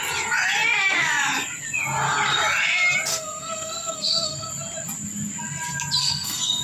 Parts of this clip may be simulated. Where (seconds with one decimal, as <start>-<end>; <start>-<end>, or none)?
3.1-4.5; 6.0-6.6